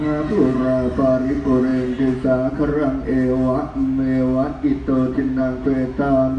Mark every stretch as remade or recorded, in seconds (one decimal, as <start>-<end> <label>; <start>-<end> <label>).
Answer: 0.0-6.4 recorded